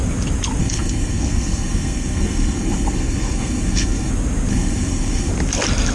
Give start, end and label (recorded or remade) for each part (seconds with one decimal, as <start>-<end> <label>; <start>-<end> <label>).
0.0-0.6 recorded; 0.6-4.1 remade; 4.1-4.5 recorded; 4.5-5.3 remade; 5.3-5.9 recorded